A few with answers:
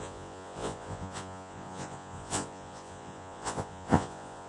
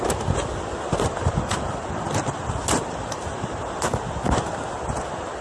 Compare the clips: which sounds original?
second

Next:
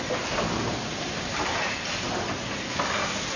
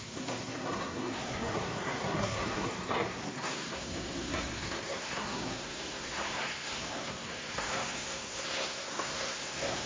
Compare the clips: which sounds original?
first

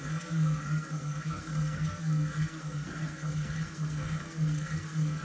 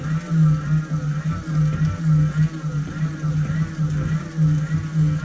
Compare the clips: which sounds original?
second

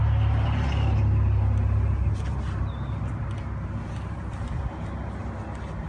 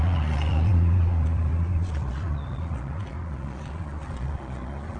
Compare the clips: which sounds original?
first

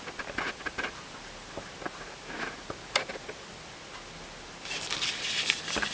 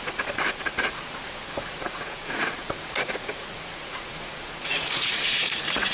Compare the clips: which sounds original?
first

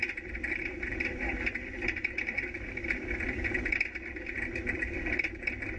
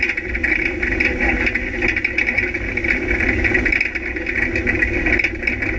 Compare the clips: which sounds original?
second